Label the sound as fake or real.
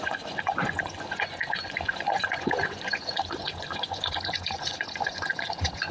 fake